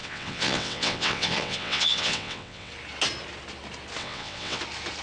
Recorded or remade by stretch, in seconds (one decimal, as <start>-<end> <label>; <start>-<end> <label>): 0.0-2.7 remade; 2.7-4.0 recorded; 4.0-4.6 remade; 4.6-5.0 recorded